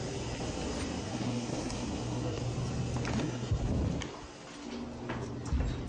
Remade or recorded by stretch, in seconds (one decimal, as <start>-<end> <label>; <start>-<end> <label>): 0.0-1.0 recorded; 1.0-2.4 remade; 2.4-3.2 recorded; 3.2-3.6 remade; 3.6-5.9 recorded